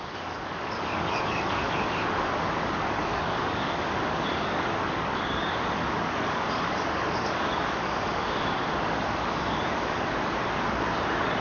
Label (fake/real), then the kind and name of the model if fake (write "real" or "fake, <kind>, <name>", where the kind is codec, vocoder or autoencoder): fake, codec, DAC